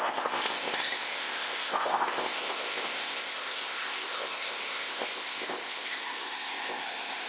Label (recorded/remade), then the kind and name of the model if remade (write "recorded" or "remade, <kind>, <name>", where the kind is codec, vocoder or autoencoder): remade, codec, ZipCodec